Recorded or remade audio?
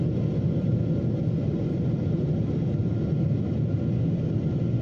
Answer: recorded